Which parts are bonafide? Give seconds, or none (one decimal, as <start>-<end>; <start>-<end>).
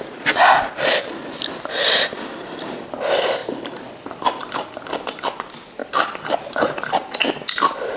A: 0.0-8.0